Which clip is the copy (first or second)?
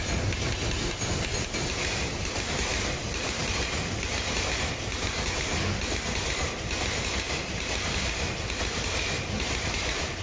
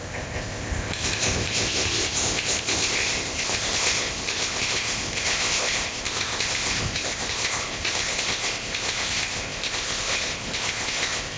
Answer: second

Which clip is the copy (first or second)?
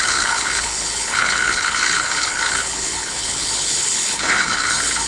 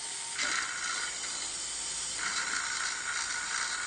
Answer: first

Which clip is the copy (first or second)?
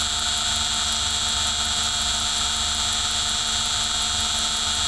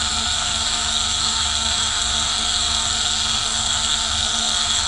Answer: second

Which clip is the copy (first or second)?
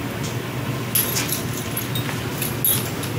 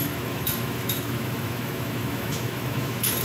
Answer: second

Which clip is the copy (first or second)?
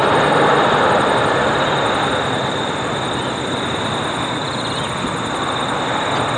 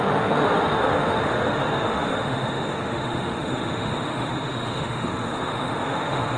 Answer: second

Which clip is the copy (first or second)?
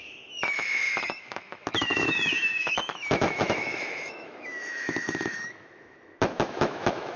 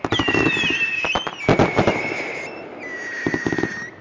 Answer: first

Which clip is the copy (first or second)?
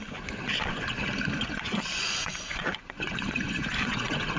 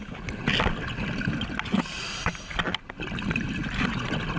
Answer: first